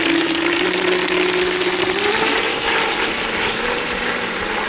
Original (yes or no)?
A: yes